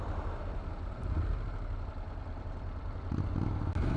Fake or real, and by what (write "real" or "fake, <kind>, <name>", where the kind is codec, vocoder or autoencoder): real